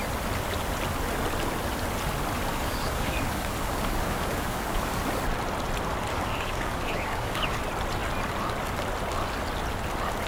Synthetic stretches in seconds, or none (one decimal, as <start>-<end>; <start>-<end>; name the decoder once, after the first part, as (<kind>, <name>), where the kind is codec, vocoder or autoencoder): 2.5-5.0 (codec, DAC); 6.1-7.6

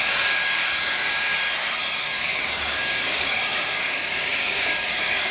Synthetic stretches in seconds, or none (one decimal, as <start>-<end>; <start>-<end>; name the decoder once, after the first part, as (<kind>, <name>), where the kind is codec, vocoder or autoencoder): 0.0-1.3 (codec, DAC); 2.0-5.3

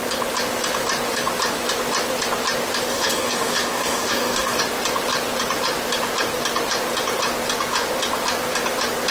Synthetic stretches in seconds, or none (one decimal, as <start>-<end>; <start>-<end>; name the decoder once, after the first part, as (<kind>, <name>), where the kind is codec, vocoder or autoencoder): 2.9-4.6 (codec, DAC)

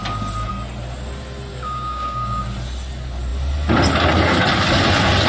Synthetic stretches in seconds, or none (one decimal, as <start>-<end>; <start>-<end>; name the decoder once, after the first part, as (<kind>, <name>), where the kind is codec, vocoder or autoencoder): 1.5-2.4 (codec, DAC)